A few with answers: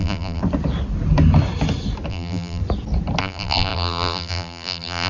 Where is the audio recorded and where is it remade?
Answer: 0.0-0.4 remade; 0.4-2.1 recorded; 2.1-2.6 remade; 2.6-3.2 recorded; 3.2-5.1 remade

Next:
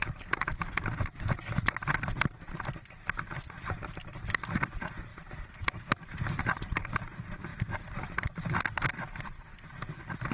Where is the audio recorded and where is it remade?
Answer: 0.0-10.3 recorded

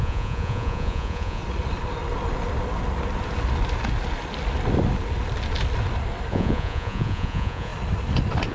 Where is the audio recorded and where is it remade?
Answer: 0.0-1.4 remade; 1.4-6.3 recorded; 6.3-7.7 remade; 7.7-8.5 recorded

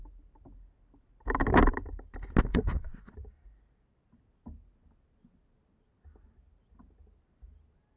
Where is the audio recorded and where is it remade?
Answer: 0.0-2.5 recorded; 2.5-3.3 remade; 3.3-8.0 recorded

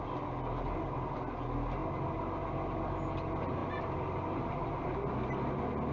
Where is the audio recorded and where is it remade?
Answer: 0.0-5.9 recorded